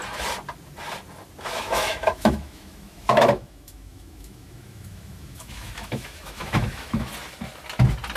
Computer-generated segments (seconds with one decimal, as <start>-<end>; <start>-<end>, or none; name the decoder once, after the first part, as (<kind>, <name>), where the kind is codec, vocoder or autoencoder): 1.4-7.1 (autoencoder, DAC-VAE)